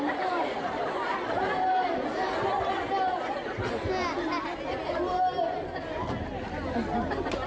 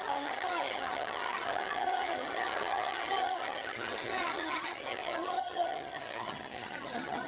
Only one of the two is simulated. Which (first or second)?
second